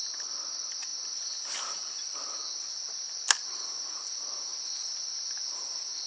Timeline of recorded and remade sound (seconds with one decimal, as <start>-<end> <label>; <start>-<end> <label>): 0.0-6.1 recorded